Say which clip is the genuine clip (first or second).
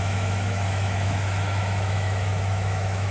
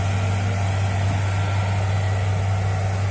second